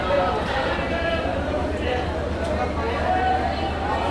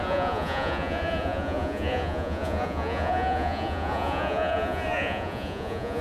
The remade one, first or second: second